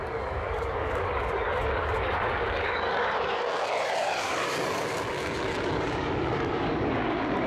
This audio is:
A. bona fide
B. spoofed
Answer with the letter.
B